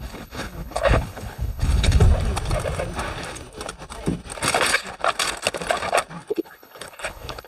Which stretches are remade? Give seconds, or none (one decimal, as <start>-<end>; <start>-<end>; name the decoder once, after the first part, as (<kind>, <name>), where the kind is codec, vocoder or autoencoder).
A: 0.0-2.0 (codec, HILCodec); 6.3-7.5